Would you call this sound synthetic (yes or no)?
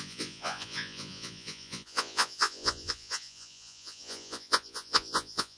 yes